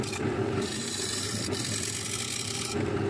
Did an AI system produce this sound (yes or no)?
yes